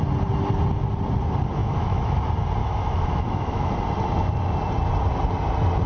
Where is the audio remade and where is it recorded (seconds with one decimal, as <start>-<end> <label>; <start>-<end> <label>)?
0.0-1.6 recorded; 1.6-2.2 remade; 2.2-2.6 recorded; 2.6-3.7 remade; 3.7-5.9 recorded